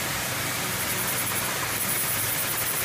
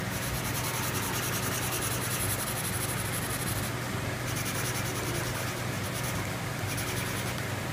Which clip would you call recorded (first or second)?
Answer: second